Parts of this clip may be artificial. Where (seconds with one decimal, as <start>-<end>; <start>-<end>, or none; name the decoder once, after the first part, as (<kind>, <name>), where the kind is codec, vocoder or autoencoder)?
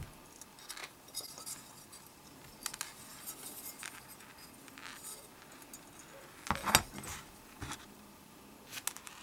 0.8-2.1 (vocoder, BigVGAN v2); 7.1-8.3